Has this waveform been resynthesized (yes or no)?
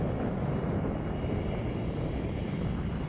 no